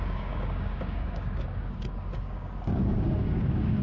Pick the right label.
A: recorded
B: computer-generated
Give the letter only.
B